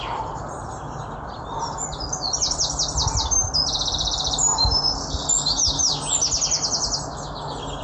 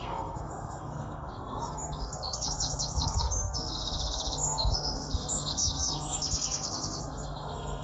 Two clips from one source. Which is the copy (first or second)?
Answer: second